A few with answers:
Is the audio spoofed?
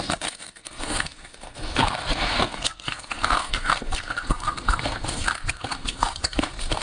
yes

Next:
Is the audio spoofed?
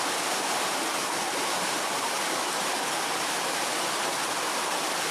no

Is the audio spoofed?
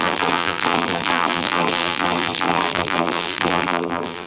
yes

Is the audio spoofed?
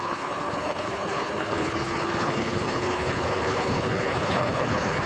yes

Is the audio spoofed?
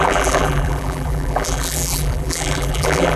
yes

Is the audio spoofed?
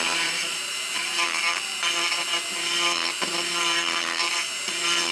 yes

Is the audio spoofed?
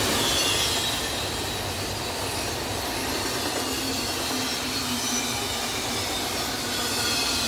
no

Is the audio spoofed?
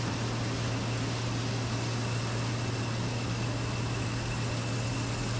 no